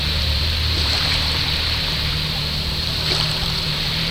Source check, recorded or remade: remade